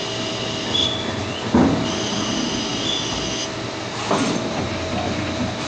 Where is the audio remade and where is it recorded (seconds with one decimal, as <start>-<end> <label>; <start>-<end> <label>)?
0.0-5.7 recorded